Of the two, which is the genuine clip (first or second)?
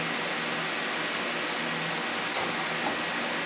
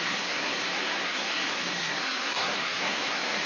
first